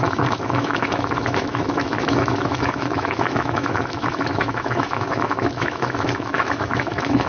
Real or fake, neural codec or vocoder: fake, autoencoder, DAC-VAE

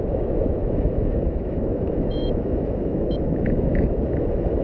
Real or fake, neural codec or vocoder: fake, autoencoder, DAC-VAE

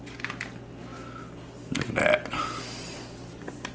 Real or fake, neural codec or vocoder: real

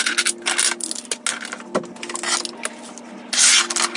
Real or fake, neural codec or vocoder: real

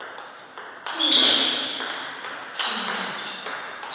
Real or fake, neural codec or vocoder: real